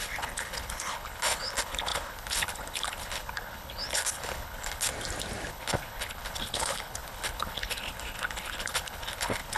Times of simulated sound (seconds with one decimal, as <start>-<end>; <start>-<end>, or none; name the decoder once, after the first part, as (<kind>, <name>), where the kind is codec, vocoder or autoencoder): 0.0-4.9 (codec, HILCodec); 5.5-9.6